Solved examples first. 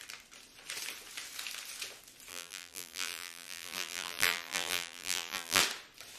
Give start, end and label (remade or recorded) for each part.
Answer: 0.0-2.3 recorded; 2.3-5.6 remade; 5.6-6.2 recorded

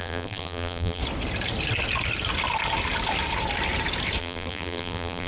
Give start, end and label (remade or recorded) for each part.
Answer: 0.0-1.0 remade; 1.0-4.2 recorded; 4.2-5.3 remade

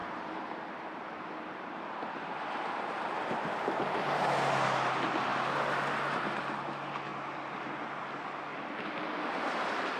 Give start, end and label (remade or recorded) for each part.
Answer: 0.0-3.8 remade; 3.8-8.5 recorded; 8.5-9.2 remade; 9.2-10.0 recorded